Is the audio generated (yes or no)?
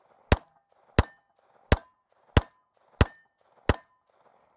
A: no